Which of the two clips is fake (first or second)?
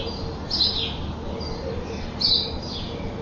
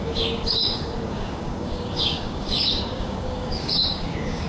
second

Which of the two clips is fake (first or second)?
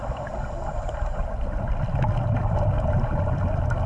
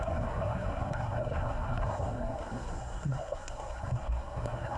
second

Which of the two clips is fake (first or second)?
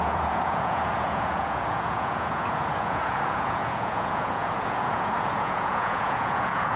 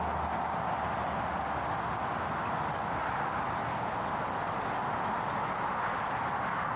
first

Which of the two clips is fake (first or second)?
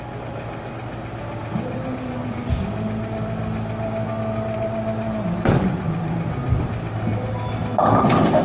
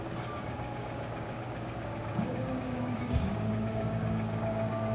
second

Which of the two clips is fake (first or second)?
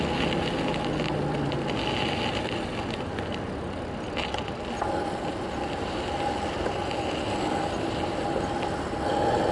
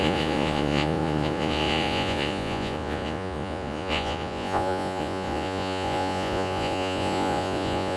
second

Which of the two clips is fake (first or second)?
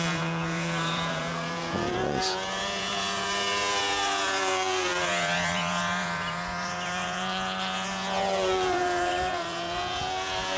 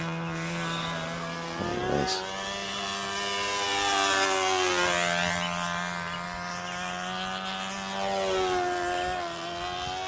first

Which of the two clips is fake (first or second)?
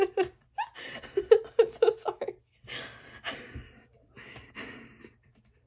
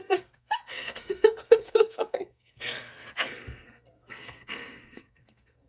second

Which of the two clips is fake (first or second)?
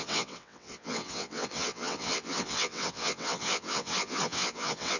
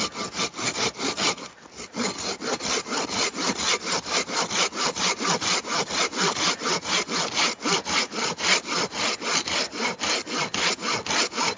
first